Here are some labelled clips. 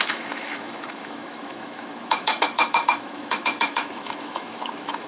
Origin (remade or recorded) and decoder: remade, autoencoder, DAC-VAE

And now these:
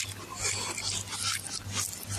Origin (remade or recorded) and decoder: recorded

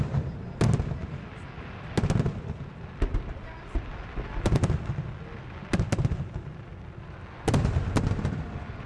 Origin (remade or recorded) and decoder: recorded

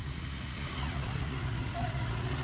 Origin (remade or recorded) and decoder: remade, vocoder, Vocos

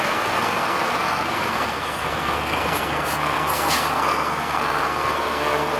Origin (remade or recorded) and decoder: remade, codec, SNAC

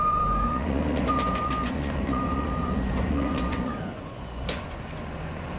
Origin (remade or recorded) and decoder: remade, vocoder, Vocos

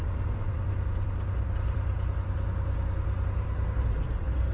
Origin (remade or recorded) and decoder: recorded